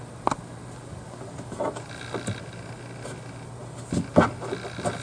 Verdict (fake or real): real